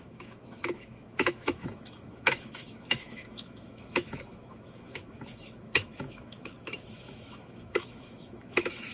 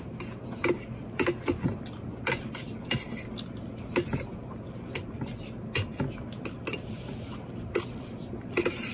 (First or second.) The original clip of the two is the second